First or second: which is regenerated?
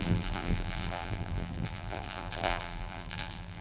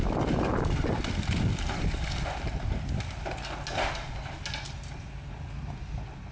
first